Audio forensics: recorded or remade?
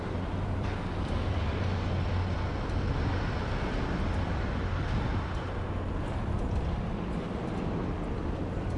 recorded